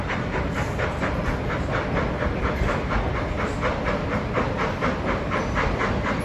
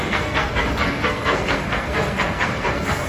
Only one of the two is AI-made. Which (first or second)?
second